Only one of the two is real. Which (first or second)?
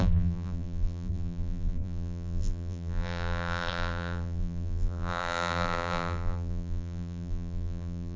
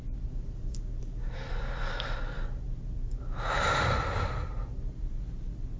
second